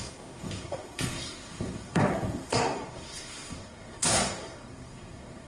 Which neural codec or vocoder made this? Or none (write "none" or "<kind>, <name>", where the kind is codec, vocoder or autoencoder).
codec, SNAC